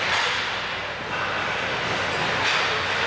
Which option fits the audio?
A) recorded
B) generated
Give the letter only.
A